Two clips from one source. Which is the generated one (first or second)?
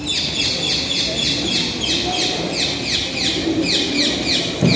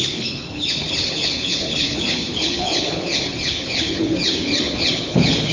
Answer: second